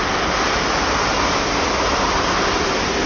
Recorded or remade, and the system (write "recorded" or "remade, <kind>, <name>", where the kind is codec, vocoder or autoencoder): recorded